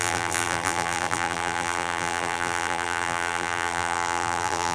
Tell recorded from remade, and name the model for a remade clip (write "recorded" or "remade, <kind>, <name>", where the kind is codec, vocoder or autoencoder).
remade, vocoder, BigVGAN v2